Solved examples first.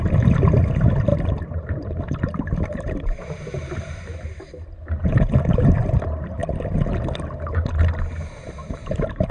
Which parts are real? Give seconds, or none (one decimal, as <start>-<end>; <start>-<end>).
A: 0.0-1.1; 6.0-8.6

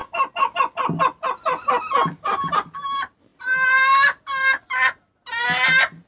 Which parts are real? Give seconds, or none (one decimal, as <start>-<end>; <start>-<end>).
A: 0.0-6.1

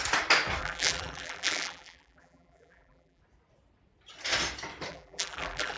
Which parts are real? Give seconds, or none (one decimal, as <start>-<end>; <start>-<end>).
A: 0.0-0.6; 3.2-4.9

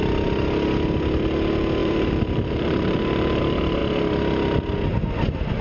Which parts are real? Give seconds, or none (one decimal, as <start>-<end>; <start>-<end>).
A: 0.0-1.8; 3.4-5.6

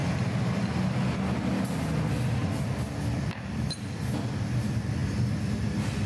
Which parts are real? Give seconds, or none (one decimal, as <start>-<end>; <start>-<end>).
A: 0.0-2.4; 4.1-6.1